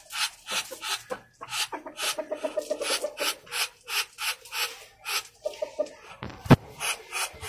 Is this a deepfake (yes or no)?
no